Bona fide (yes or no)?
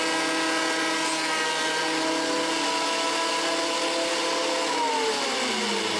yes